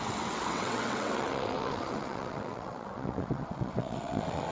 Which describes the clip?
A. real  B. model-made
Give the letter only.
B